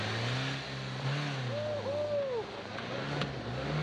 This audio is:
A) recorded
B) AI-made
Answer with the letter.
A